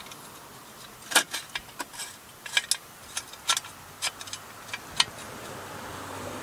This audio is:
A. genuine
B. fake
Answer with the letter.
A